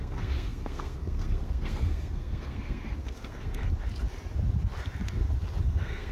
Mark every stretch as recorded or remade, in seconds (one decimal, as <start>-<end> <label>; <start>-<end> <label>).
0.0-3.6 remade; 3.6-5.6 recorded; 5.6-6.1 remade